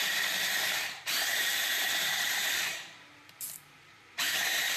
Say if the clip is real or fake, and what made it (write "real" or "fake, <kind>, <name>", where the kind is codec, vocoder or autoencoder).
fake, vocoder, BigVGAN v2